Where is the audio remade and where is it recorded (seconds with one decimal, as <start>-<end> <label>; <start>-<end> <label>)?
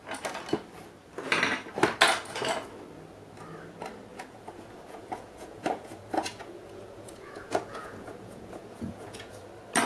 0.0-4.1 recorded; 4.1-9.4 remade; 9.4-9.9 recorded